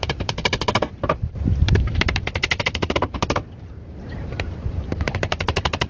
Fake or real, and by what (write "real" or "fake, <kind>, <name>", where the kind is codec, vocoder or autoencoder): fake, vocoder, BigVGAN v2